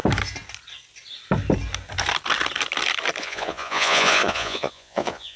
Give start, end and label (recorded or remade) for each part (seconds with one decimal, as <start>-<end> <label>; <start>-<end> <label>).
0.0-3.2 recorded; 3.2-5.4 remade